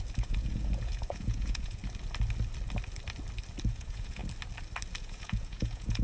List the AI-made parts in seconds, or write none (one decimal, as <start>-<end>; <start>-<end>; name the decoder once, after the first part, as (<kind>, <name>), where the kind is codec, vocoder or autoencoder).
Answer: 0.0-1.8 (vocoder, Vocos); 3.7-4.2; 5.0-6.0